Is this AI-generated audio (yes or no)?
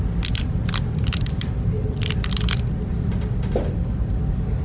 yes